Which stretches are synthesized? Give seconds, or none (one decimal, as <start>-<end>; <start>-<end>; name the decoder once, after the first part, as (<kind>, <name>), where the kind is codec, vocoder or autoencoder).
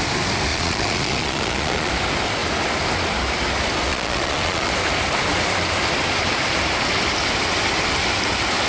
0.5-1.9 (vocoder, Vocos); 3.9-4.7